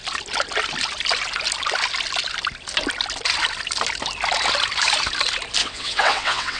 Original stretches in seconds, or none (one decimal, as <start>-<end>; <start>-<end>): 0.0-5.6